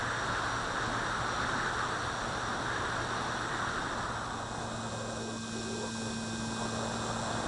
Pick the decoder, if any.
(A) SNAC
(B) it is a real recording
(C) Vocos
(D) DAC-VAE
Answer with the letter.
B